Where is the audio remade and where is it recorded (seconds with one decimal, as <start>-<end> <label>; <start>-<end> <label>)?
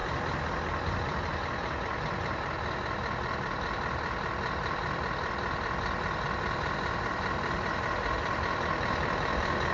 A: 0.0-9.7 recorded